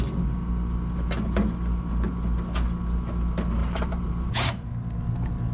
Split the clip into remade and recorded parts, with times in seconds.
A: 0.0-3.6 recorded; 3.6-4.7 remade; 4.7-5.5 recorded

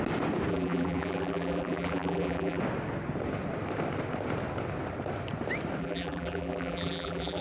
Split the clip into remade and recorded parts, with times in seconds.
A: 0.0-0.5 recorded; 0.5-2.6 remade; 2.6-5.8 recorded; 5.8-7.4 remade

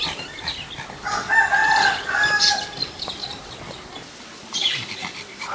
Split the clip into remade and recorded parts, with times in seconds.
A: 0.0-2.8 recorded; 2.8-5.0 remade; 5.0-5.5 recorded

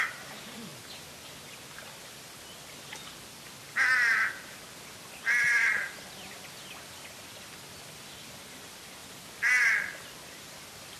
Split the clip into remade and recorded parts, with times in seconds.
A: 0.0-0.7 remade; 0.7-5.0 recorded; 5.0-9.0 remade; 9.0-10.2 recorded; 10.2-11.0 remade